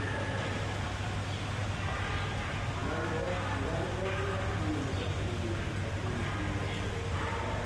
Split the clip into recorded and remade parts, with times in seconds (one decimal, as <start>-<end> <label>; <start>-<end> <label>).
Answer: 0.0-7.7 recorded